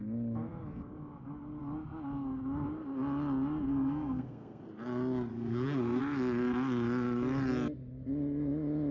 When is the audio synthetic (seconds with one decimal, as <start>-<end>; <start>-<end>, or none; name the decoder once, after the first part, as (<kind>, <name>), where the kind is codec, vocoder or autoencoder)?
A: 3.7-4.6 (codec, SNAC); 5.3-6.0

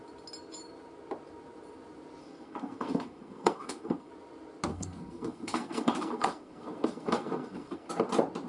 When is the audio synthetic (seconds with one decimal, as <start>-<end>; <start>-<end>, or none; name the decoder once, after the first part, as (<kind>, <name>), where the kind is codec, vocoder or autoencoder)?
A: 2.2-4.1 (codec, SNAC); 4.7-7.9

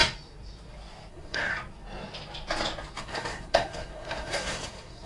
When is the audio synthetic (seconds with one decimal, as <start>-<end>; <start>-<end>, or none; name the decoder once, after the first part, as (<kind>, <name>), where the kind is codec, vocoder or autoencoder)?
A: 1.1-1.5 (codec, SNAC); 3.0-5.1

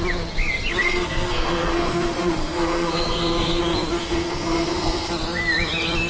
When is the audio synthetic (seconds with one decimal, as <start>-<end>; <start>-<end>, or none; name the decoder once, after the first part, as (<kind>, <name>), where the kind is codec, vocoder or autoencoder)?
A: 0.8-3.6 (codec, SNAC); 4.0-5.1

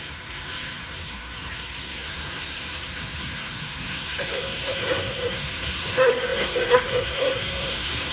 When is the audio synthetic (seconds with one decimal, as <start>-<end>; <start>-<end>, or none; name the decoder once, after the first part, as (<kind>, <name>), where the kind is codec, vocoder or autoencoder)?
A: 0.0-8.1 (codec, SNAC)

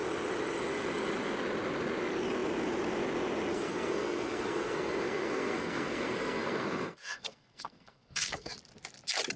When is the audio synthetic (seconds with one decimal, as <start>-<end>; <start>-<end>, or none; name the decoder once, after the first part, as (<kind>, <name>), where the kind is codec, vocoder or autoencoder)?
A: 3.5-8.5 (codec, SNAC)

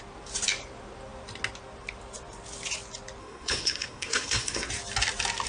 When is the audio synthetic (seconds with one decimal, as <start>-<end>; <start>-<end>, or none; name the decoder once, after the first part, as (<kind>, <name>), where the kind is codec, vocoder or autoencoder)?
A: 3.2-4.7 (codec, SNAC)

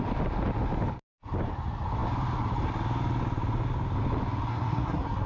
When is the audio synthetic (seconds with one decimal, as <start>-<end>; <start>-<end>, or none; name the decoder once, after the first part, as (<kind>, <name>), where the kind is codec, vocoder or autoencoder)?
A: 4.5-5.3 (codec, SNAC)